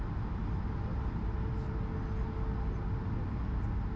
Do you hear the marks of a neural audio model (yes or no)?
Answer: no